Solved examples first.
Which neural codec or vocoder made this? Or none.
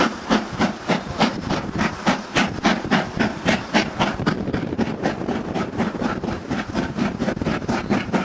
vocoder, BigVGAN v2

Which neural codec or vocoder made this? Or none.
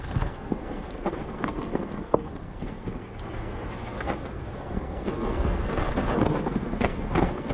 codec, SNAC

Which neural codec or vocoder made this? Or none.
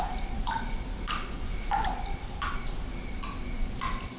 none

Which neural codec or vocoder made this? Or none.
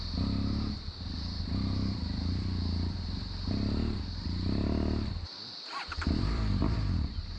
vocoder, BigVGAN v2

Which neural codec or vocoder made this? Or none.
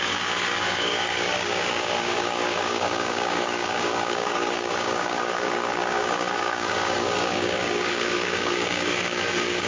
codec, DAC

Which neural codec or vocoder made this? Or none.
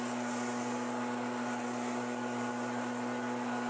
none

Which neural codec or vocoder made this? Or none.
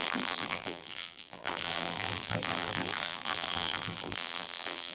vocoder, BigVGAN v2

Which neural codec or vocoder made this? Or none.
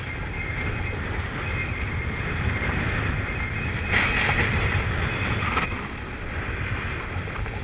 none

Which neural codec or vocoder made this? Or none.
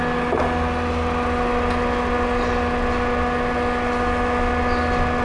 none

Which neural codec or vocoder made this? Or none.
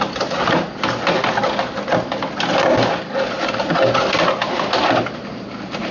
none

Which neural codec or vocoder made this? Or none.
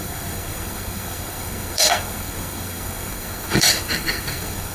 codec, SNAC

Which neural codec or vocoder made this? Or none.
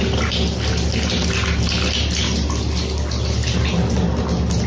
none